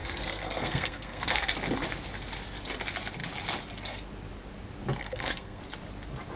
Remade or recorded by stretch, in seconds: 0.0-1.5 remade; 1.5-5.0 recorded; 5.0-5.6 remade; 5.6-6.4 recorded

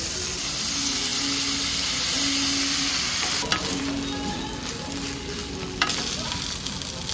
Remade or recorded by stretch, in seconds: 0.0-5.4 recorded; 5.4-6.4 remade; 6.4-7.1 recorded